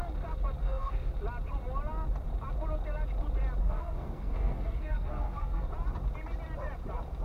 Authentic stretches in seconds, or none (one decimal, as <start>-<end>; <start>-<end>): 0.0-0.6; 1.1-3.6; 5.7-7.2